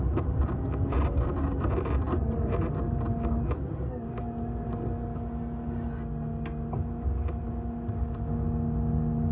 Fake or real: real